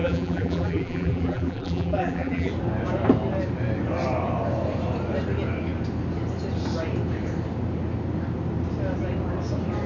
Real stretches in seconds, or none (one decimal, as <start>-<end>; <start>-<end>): 2.5-9.9